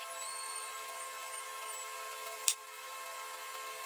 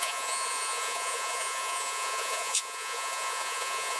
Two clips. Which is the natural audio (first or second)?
first